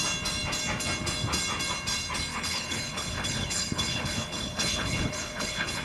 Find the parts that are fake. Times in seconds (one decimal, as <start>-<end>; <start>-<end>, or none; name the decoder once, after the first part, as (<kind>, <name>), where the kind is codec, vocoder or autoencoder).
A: 2.3-5.8 (codec, HILCodec)

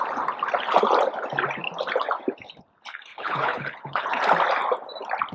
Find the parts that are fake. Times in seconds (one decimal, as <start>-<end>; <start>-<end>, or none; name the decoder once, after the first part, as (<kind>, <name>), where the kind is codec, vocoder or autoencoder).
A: 3.1-4.2 (codec, HILCodec)

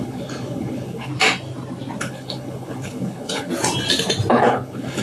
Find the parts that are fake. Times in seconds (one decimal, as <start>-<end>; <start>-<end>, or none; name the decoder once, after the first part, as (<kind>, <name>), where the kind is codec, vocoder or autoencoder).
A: 0.0-1.1 (codec, HILCodec); 2.0-3.5; 4.3-5.0

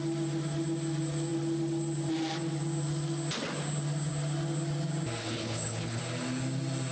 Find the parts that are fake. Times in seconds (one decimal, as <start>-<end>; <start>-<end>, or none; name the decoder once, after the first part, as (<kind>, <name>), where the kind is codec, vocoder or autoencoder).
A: 5.2-6.0 (codec, HILCodec)

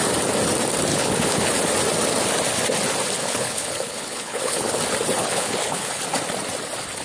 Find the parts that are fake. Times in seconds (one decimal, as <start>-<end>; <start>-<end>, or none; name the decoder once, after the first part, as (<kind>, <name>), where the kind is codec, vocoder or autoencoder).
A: 0.9-1.5 (codec, HILCodec); 3.2-4.8; 5.2-6.0